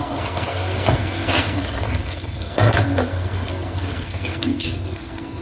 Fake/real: fake